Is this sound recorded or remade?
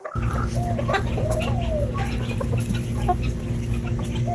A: recorded